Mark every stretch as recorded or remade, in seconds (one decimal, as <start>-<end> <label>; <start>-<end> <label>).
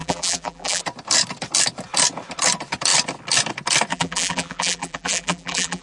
0.0-0.8 remade; 0.8-3.9 recorded; 3.9-5.8 remade